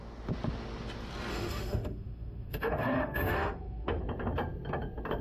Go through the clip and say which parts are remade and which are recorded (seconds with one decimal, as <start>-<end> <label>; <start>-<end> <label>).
0.0-1.3 recorded; 1.3-4.0 remade; 4.0-5.2 recorded